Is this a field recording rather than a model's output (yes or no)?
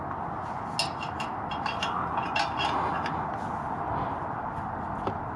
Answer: yes